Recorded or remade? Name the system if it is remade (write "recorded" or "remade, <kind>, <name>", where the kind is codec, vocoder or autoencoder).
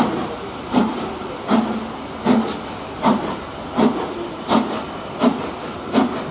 recorded